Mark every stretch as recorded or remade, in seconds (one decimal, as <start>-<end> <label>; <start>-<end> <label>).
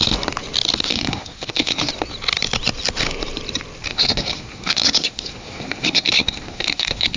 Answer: 0.0-0.8 recorded; 0.8-1.9 remade; 1.9-3.9 recorded; 3.9-7.2 remade